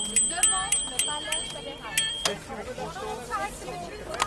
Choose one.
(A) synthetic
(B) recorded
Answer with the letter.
B